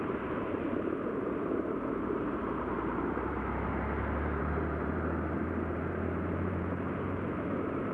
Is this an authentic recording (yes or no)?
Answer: no